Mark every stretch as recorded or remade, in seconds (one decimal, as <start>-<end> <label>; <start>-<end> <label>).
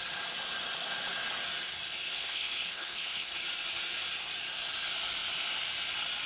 0.0-2.1 recorded; 2.1-3.3 remade; 3.3-6.3 recorded